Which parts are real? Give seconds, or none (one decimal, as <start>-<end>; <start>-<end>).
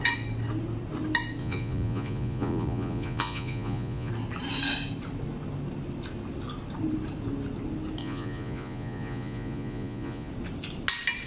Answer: 0.0-1.4; 4.1-8.0; 10.3-11.3